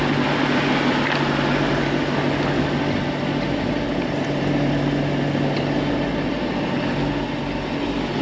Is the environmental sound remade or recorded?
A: recorded